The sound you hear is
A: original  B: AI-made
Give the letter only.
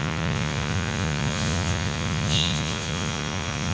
B